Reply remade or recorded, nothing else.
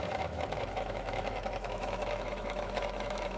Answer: remade